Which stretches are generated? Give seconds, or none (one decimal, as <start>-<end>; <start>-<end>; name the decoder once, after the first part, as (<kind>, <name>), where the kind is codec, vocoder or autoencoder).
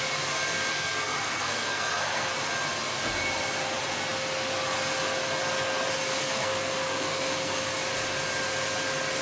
0.7-2.3 (codec, SNAC); 6.1-7.6